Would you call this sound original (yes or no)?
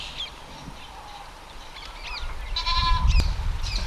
yes